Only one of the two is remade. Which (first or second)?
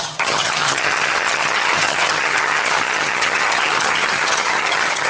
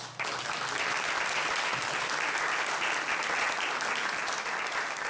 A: first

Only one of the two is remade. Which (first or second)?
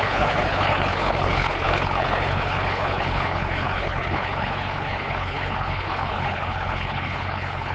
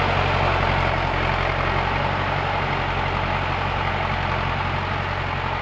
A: first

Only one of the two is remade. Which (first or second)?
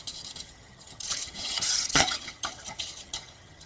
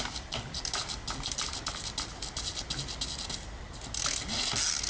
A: first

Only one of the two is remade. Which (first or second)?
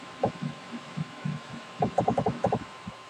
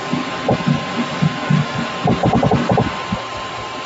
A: first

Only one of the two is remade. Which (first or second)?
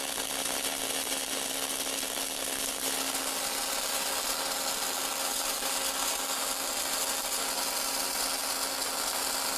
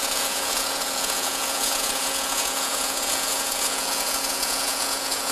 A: second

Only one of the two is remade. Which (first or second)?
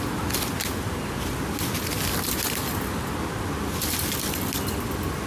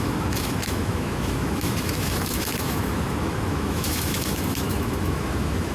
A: second